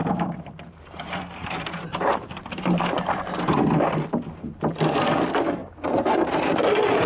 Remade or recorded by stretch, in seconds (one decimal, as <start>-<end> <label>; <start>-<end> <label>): 0.0-7.1 remade